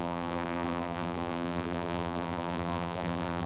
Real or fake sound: fake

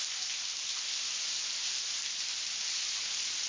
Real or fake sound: real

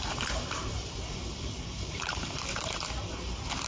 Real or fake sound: fake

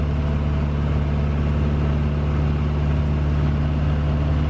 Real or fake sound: real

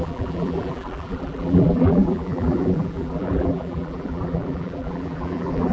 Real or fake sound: fake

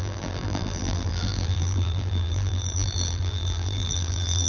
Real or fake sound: fake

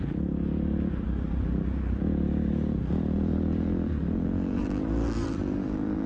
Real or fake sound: fake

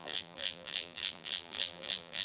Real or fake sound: fake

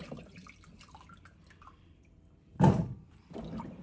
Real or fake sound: fake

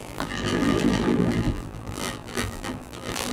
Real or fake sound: fake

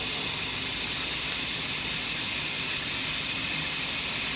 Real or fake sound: fake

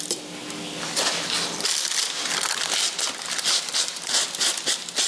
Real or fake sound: real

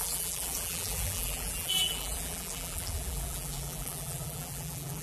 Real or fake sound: fake